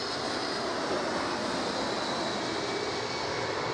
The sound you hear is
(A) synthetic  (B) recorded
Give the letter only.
B